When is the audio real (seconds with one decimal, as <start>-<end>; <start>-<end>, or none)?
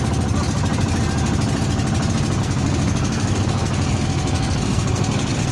0.0-2.4